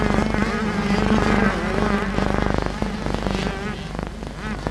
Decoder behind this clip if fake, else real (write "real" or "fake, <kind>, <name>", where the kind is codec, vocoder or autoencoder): real